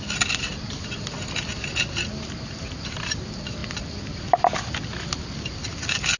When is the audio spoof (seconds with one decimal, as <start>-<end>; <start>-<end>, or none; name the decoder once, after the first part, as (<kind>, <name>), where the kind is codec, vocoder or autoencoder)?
none